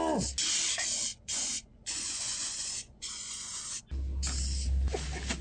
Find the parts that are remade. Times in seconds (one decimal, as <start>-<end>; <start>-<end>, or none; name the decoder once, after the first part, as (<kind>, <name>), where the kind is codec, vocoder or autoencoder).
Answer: 1.1-3.8 (vocoder, Vocos)

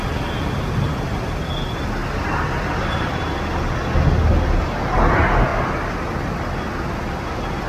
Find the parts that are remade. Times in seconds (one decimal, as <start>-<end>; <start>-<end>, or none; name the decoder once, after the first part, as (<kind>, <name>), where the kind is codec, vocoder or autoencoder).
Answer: 2.0-3.4 (vocoder, BigVGAN v2)

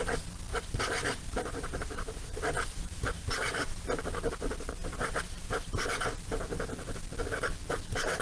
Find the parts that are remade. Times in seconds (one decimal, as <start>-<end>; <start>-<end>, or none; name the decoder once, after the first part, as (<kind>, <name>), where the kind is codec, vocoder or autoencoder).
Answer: 0.5-4.0 (vocoder, BigVGAN v2); 4.8-5.8

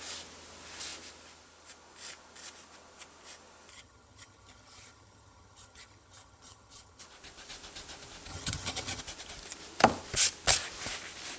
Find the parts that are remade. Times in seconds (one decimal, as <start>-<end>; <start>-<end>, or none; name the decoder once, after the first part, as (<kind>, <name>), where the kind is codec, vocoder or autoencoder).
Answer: 3.7-7.0 (vocoder, HiFi-GAN); 8.3-9.0

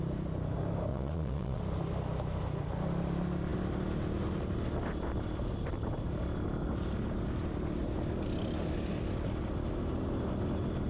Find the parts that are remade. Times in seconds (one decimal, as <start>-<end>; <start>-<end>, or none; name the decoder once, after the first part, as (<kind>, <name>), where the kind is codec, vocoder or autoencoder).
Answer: 0.9-1.6 (vocoder, Vocos)

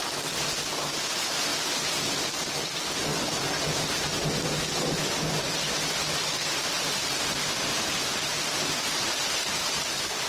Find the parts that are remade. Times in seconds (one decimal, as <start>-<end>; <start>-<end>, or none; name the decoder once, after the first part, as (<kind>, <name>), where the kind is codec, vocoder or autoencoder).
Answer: 1.5-2.2 (vocoder, BigVGAN v2)